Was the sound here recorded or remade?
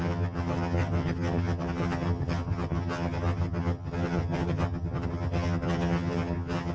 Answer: remade